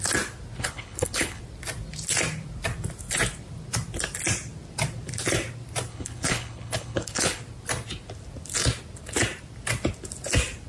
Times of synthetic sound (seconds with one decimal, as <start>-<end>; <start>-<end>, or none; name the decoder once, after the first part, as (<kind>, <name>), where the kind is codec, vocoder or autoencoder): 0.6-1.4 (codec, HILCodec); 5.9-7.4